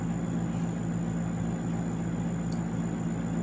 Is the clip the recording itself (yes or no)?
yes